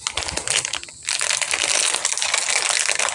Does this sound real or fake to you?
real